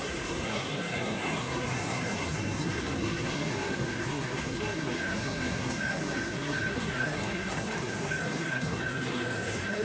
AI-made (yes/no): yes